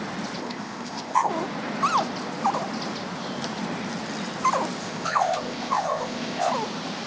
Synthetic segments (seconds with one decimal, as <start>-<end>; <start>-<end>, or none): 0.4-1.3; 4.8-6.5